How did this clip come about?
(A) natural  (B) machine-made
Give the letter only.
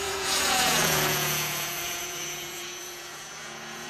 B